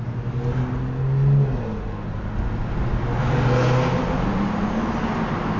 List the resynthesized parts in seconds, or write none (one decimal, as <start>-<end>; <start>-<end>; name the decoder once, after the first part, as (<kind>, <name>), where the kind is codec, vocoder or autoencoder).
none